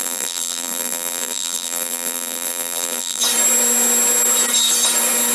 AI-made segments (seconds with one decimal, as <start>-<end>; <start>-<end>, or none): 0.0-3.2